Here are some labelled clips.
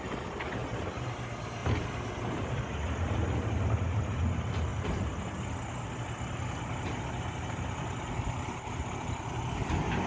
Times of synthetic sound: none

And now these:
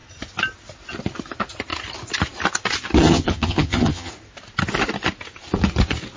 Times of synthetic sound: 3.0-4.1 (vocoder, HiFi-GAN)

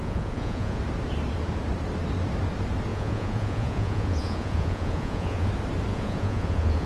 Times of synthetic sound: 0.0-0.8 (vocoder, Vocos); 2.9-5.5; 5.9-6.9

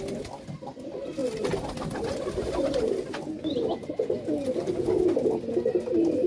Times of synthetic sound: none